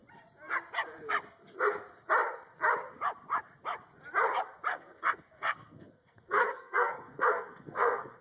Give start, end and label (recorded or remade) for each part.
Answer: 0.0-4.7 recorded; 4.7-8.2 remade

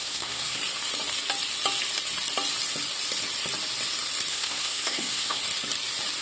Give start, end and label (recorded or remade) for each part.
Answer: 0.0-0.6 remade; 0.6-4.3 recorded; 4.3-5.4 remade; 5.4-6.2 recorded

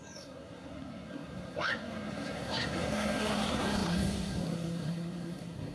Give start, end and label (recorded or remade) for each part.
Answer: 0.0-5.7 remade

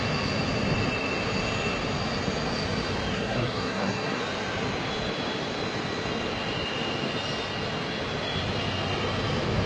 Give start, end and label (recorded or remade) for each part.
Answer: 0.0-3.1 recorded; 3.1-4.2 remade; 4.2-9.7 recorded